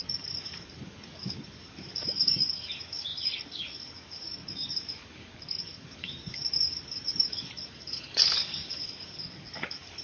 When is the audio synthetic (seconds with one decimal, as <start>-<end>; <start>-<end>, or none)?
0.0-10.0